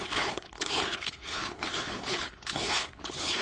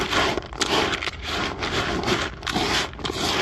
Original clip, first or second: second